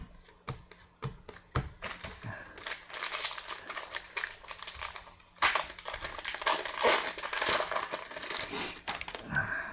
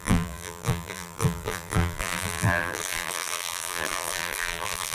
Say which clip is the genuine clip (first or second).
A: first